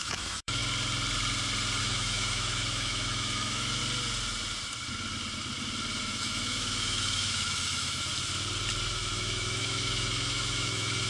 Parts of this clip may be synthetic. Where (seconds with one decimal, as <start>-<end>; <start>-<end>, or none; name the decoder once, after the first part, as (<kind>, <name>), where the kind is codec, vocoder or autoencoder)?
0.0-0.6 (autoencoder, DAC-VAE); 1.8-3.8; 6.0-8.1; 8.9-11.1